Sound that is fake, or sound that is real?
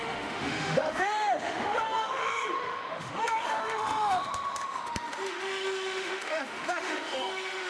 fake